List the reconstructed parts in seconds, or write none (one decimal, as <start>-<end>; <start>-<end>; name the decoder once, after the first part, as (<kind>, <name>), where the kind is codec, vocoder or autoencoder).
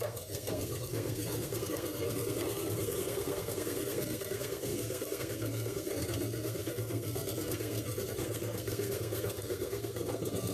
0.0-10.5 (codec, SNAC)